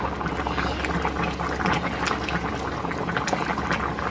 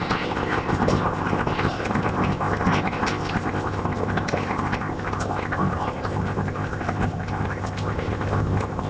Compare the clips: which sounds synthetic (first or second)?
second